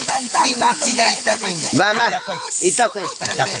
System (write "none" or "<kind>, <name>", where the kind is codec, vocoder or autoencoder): codec, HILCodec